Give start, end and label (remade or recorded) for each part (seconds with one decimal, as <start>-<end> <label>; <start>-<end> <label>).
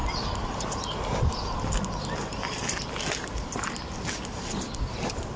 0.0-5.4 recorded